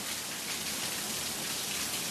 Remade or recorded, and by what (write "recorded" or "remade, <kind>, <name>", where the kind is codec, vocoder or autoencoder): recorded